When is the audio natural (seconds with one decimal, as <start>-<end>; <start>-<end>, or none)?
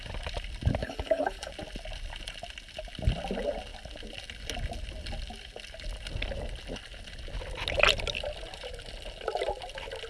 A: 0.0-0.8; 1.5-10.1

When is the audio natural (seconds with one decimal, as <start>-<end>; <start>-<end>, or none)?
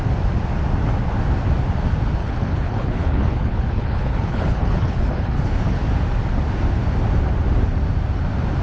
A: 0.0-2.2; 5.8-8.6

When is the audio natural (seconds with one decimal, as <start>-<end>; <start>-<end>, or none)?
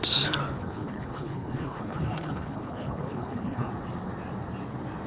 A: 0.0-0.6; 3.7-5.1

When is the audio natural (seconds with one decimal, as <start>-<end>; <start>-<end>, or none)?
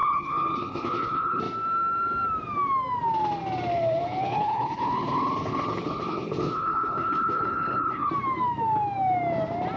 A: 1.4-3.7; 8.1-9.8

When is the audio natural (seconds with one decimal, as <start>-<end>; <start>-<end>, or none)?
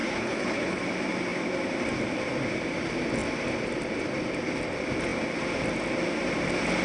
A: 0.8-6.8